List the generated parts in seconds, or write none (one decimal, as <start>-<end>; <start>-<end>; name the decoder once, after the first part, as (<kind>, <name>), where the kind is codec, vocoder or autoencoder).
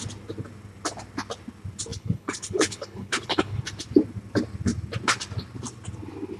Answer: 1.9-3.6 (codec, HILCodec)